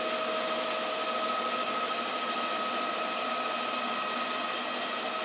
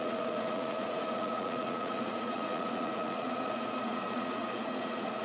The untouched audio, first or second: first